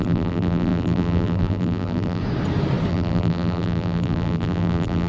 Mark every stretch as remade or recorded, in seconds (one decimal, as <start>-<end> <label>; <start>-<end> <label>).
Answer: 0.0-2.2 remade; 2.2-2.9 recorded; 2.9-5.1 remade